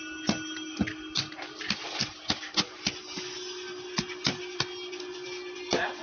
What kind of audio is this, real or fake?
real